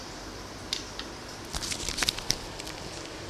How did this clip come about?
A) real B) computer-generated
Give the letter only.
B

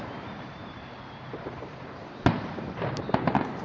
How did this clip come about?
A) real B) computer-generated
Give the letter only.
B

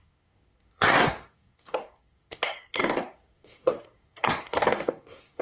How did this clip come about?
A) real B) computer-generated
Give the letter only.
B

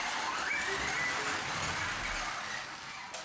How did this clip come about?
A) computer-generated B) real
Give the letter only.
B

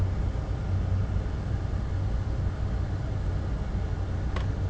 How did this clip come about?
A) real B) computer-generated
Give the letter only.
A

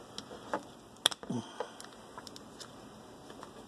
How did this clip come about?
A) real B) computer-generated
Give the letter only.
A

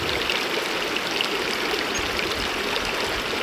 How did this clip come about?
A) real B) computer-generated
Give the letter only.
A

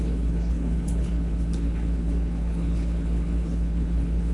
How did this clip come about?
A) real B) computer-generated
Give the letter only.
B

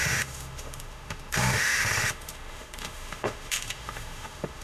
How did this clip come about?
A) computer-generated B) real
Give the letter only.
A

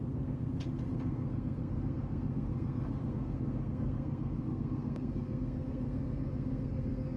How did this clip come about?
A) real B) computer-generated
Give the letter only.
B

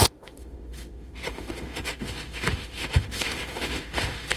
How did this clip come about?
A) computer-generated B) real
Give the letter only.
A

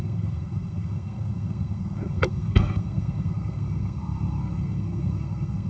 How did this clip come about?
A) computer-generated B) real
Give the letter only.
A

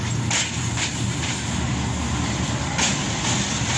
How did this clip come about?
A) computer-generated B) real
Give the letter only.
B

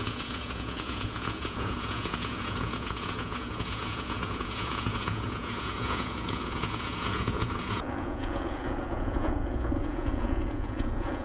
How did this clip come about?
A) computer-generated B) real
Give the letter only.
A